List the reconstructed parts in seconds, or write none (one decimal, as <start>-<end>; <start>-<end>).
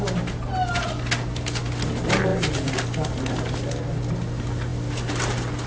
none